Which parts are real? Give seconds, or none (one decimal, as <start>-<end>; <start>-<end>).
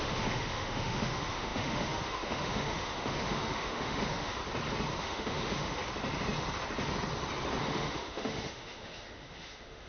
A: 4.4-5.0; 5.8-7.6